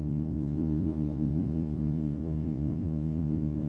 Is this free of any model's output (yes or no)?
no